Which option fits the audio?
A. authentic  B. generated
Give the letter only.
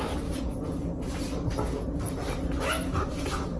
A